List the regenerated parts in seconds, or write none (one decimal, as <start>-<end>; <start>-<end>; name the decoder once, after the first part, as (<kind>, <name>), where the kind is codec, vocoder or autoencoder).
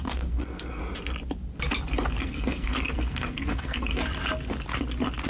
0.0-0.8 (codec, SNAC); 2.2-4.0